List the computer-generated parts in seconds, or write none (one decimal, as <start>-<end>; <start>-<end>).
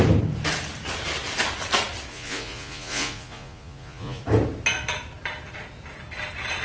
2.1-4.2